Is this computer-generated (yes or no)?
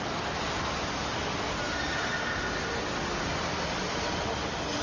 no